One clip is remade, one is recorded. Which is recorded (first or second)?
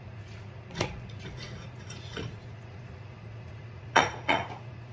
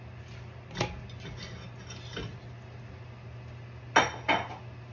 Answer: second